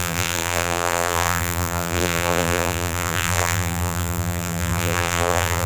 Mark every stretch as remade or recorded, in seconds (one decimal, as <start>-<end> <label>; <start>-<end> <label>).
0.0-5.7 remade